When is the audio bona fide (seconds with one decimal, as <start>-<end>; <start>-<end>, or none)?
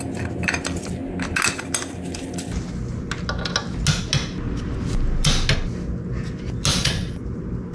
0.0-6.7; 7.2-7.7